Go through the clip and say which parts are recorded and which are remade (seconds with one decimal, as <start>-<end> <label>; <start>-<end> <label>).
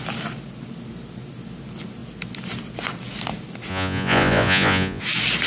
0.0-3.7 recorded; 3.7-5.0 remade; 5.0-5.5 recorded